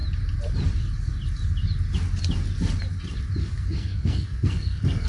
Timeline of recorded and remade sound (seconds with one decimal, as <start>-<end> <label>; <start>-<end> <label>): 0.0-3.4 recorded; 3.4-5.1 remade